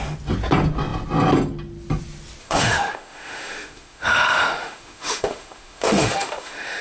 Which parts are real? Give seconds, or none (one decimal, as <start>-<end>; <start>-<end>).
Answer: 0.0-2.4